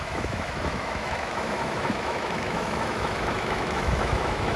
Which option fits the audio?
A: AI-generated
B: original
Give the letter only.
A